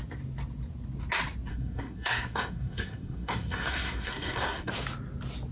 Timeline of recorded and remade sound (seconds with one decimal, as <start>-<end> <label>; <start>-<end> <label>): 0.0-1.5 recorded; 1.5-4.7 remade; 4.7-5.5 recorded